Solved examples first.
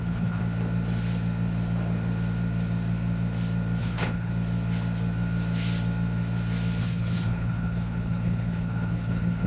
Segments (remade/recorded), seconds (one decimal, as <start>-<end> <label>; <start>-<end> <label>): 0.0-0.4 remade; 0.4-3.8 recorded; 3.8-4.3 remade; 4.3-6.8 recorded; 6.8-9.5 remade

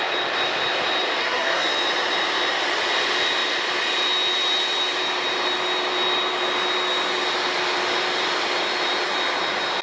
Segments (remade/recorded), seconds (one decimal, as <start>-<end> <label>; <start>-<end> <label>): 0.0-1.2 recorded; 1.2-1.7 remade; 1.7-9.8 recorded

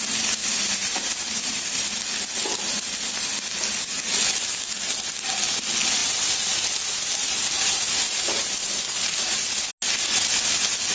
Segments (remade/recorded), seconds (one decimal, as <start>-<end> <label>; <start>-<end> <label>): 0.0-0.4 recorded; 0.4-2.0 remade; 2.0-2.4 recorded; 2.4-2.9 remade; 2.9-6.0 recorded; 6.0-9.7 remade; 9.7-10.9 recorded